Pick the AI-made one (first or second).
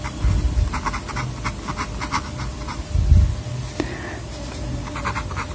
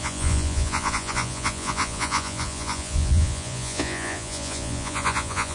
second